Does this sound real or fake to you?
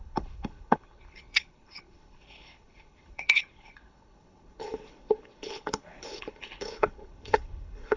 fake